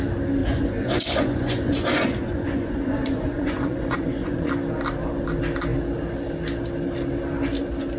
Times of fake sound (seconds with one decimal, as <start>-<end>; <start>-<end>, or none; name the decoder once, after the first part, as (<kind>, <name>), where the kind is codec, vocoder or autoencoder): 0.4-4.5 (vocoder, Vocos)